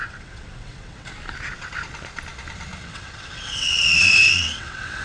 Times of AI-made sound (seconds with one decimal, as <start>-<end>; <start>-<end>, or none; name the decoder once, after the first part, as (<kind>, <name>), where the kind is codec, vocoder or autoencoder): 0.0-1.1 (vocoder, WaveNeXt); 2.8-5.0